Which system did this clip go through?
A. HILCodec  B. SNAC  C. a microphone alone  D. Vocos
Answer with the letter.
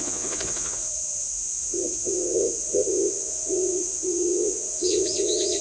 D